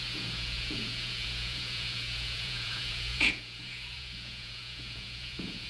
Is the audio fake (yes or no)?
yes